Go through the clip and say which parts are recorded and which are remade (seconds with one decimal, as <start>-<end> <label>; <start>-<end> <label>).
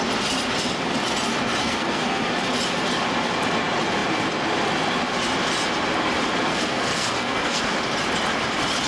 0.0-1.6 recorded; 1.6-2.3 remade; 2.3-6.5 recorded; 6.5-7.6 remade; 7.6-8.9 recorded